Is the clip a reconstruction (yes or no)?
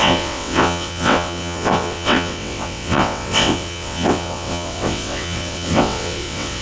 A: yes